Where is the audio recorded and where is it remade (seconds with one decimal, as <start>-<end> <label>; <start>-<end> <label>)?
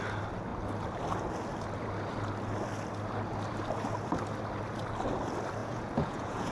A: 0.0-5.6 recorded; 5.6-6.5 remade